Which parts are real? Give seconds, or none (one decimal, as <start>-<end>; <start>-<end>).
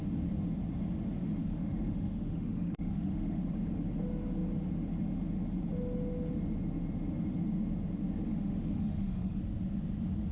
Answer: 0.0-1.4; 3.4-8.3; 9.4-10.3